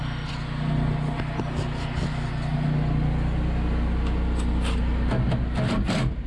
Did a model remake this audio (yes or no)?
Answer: no